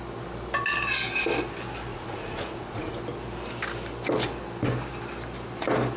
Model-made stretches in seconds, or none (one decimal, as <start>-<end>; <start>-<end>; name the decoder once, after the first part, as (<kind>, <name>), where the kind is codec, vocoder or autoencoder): 1.9-3.0 (vocoder, Vocos)